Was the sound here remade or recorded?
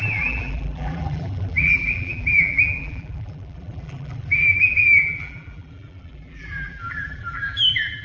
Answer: remade